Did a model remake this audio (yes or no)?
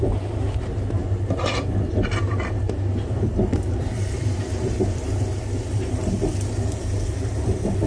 yes